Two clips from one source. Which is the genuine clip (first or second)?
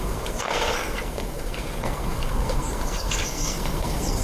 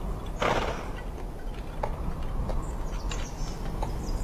second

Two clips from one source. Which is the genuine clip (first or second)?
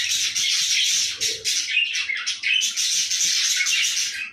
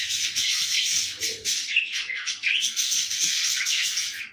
first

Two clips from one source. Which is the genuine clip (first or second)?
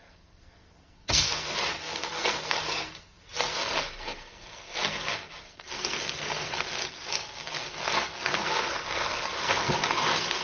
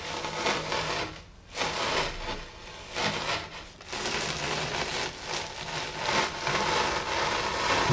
second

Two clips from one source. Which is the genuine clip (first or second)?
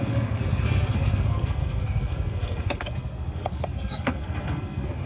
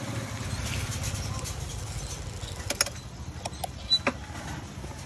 second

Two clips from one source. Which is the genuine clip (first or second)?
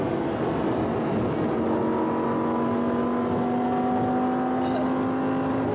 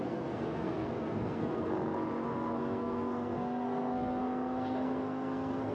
first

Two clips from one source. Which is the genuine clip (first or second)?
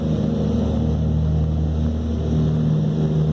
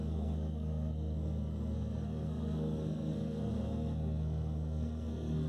first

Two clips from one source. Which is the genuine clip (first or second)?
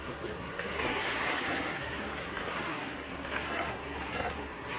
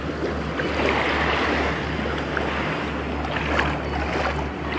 second